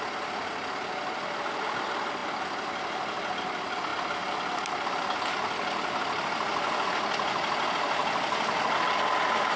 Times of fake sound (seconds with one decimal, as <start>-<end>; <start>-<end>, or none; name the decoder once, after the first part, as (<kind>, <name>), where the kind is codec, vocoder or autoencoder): none